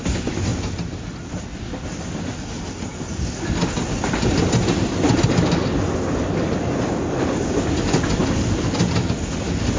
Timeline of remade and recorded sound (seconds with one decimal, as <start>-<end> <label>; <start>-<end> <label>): 0.0-9.8 recorded